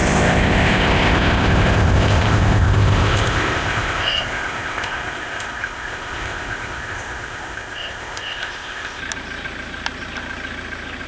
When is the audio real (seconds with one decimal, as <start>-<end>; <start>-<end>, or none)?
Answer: 9.0-11.1